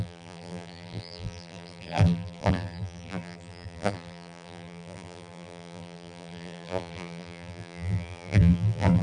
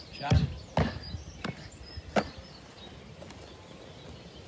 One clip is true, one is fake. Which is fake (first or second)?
first